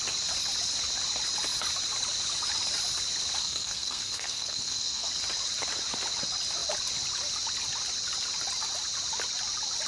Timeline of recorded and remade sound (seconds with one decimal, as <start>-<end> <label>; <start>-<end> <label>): 0.0-3.4 recorded; 3.4-5.1 remade; 5.1-9.9 recorded